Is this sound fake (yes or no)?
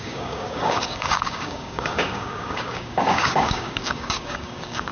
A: yes